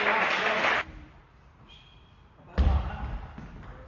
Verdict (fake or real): real